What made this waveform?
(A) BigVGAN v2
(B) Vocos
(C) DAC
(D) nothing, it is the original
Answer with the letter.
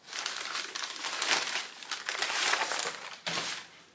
D